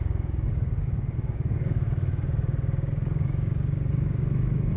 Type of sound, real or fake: fake